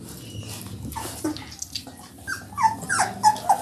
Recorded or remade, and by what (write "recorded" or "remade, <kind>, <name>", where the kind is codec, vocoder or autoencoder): recorded